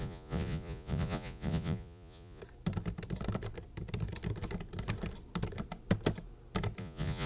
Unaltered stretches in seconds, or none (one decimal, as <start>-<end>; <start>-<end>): 2.4-6.8